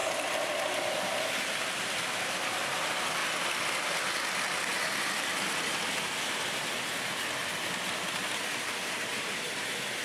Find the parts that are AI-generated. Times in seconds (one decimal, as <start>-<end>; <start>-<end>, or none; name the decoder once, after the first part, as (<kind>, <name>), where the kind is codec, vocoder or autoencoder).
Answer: none